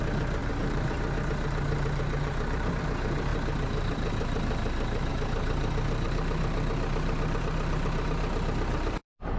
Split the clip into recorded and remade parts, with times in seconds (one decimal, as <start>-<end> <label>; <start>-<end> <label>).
0.0-9.4 remade